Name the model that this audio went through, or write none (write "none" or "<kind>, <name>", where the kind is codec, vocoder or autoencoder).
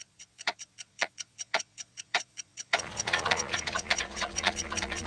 vocoder, Vocos